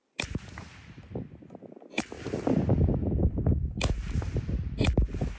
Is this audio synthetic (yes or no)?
no